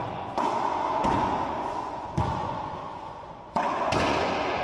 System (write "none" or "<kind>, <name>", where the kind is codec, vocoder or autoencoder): vocoder, Vocos